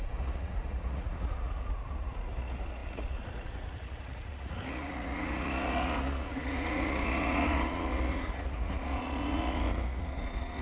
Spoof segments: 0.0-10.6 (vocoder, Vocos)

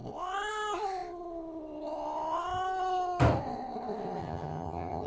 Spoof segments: 4.2-5.1 (vocoder, HiFi-GAN)